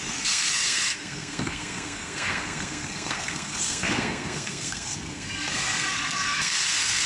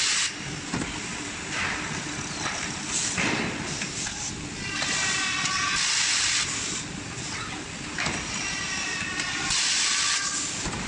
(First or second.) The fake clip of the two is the first